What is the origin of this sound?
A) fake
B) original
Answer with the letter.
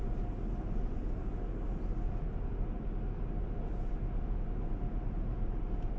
B